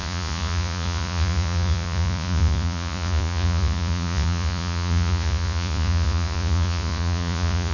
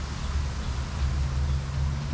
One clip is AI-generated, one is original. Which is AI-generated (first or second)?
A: first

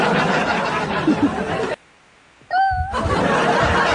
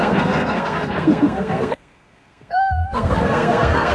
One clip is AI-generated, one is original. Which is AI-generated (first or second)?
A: second